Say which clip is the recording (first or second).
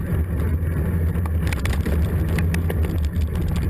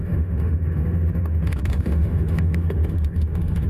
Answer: first